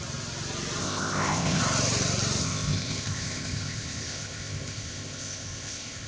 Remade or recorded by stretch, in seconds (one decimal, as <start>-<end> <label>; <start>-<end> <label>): 0.0-0.8 recorded; 0.8-1.6 remade; 1.6-2.4 recorded; 2.4-6.1 remade